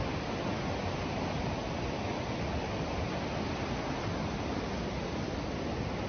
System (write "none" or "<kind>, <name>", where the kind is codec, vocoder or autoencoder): none